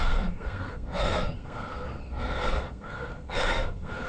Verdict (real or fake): fake